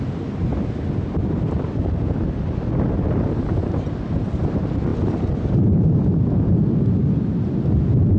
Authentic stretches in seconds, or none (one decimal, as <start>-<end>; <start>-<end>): 0.0-8.2